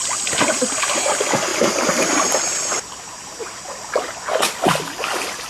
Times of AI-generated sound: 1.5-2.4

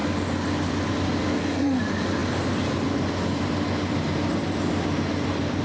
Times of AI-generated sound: 1.3-1.8